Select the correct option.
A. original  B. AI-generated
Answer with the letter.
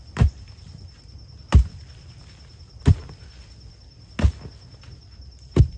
A